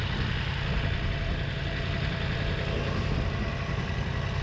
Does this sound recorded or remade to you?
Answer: recorded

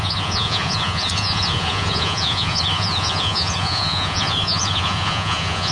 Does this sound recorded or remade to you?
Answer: remade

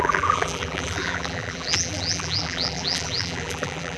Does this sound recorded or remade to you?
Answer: remade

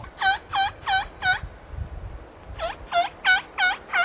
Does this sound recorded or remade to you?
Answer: recorded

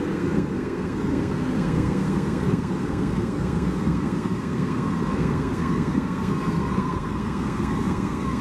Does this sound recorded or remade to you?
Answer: remade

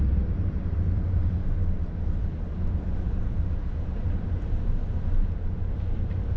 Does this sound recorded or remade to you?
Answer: remade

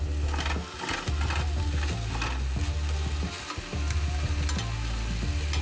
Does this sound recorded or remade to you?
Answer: recorded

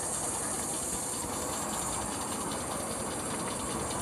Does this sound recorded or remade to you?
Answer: recorded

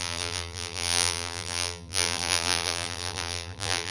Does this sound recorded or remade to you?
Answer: remade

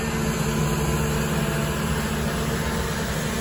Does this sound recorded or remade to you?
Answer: recorded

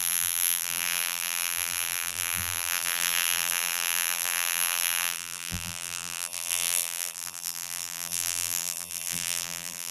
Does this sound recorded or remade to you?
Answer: remade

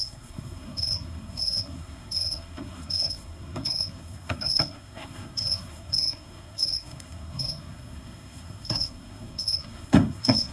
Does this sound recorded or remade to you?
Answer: remade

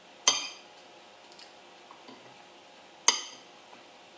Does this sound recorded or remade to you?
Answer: recorded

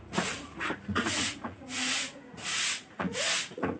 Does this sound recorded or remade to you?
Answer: remade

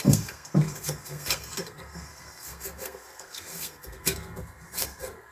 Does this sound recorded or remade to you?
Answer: remade